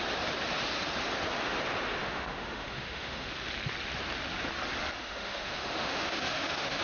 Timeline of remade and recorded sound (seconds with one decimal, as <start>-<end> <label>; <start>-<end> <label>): 0.0-2.0 recorded; 2.0-3.3 remade; 3.3-5.0 recorded; 5.0-6.8 remade

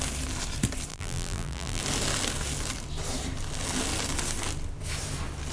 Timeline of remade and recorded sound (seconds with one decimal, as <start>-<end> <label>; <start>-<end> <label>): 0.0-0.9 recorded; 0.9-1.8 remade; 1.8-5.5 recorded

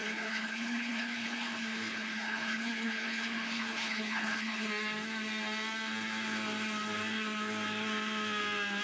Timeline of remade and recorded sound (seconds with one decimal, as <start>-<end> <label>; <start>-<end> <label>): 0.0-4.7 remade; 4.7-8.8 recorded

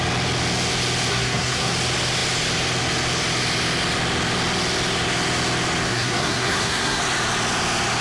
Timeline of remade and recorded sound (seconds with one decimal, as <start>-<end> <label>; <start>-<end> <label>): 0.0-1.1 recorded; 1.1-1.7 remade; 1.7-5.9 recorded; 5.9-7.0 remade; 7.0-8.0 recorded

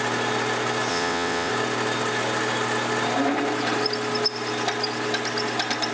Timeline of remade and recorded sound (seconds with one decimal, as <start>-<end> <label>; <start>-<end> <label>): 0.0-0.9 recorded; 0.9-1.5 remade; 1.5-5.9 recorded